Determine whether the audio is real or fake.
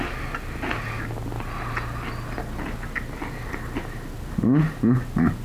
real